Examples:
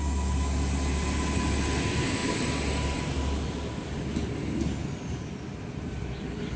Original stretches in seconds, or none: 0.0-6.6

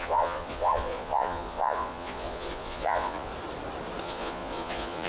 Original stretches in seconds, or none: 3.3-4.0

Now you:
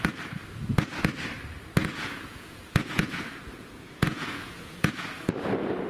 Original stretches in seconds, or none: 0.0-1.8; 5.3-5.9

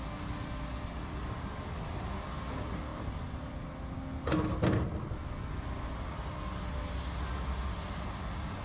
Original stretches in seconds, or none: 0.0-8.6

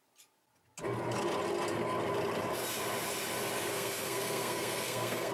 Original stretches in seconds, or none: 0.0-3.7

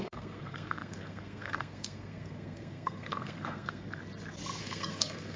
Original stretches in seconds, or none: 4.0-4.6

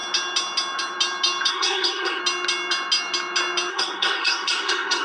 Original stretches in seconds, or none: 0.0-1.5; 2.2-3.7